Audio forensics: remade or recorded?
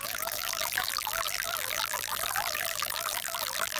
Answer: remade